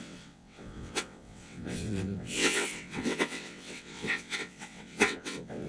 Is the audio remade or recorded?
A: remade